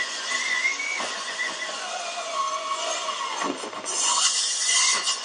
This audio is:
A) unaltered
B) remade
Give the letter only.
B